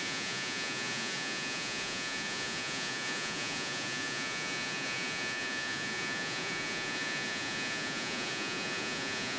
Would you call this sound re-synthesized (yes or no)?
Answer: yes